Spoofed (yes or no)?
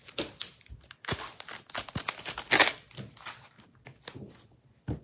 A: no